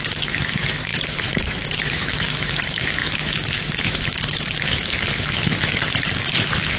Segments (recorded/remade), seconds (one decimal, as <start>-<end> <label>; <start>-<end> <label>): 0.0-6.8 remade